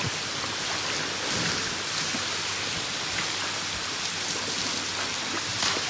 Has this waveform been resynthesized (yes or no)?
no